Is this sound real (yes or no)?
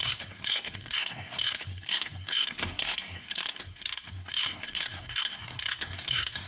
no